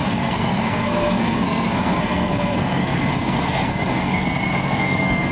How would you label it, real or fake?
fake